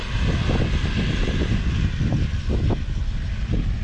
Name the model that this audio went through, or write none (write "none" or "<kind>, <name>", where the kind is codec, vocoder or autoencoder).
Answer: none